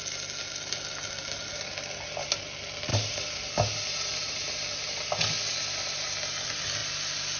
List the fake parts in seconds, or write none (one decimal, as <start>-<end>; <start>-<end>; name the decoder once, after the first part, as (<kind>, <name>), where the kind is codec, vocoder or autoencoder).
none